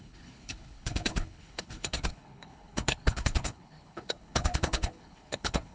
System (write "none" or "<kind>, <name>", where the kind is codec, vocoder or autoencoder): codec, HILCodec